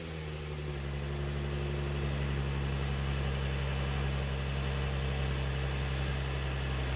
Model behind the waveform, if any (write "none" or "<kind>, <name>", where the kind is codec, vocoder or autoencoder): none